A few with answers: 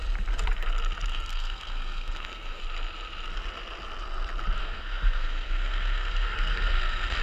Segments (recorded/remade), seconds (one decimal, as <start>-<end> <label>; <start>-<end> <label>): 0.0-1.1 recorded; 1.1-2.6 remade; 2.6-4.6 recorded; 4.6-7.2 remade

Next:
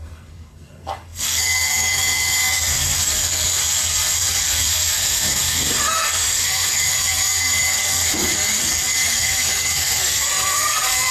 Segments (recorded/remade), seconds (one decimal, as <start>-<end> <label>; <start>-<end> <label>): 0.0-11.1 remade

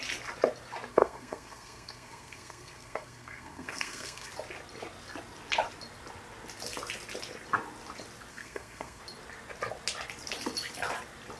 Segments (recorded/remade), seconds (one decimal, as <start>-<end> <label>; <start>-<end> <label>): 0.0-0.9 recorded; 0.9-4.3 remade; 4.3-8.3 recorded; 8.3-9.0 remade; 9.0-11.4 recorded

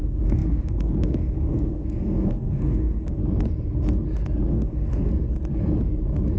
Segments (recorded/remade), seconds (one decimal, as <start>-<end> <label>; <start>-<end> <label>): 0.0-3.2 remade; 3.2-4.5 recorded; 4.5-5.1 remade; 5.1-6.4 recorded